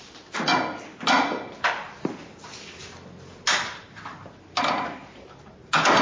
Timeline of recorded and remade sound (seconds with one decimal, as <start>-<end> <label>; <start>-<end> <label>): 0.0-0.5 remade; 0.5-4.1 recorded; 4.1-6.0 remade